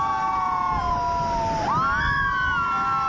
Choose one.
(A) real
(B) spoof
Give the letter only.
A